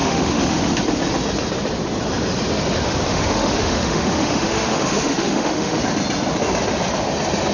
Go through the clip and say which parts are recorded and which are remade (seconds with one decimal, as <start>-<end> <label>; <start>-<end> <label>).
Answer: 0.0-0.8 remade; 0.8-3.1 recorded; 3.1-5.8 remade; 5.8-7.5 recorded